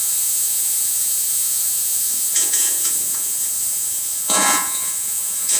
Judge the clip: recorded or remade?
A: remade